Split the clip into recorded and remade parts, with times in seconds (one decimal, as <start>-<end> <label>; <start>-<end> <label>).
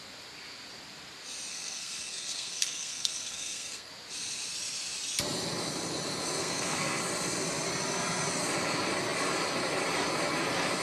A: 0.0-1.5 recorded; 1.5-3.9 remade; 3.9-6.4 recorded; 6.4-7.0 remade; 7.0-10.8 recorded